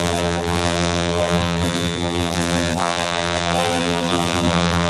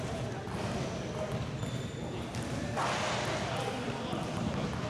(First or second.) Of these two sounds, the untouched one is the second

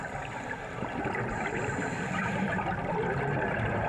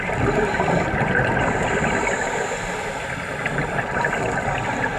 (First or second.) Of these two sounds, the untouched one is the second